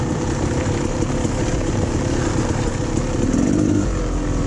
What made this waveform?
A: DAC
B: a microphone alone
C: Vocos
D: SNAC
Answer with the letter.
B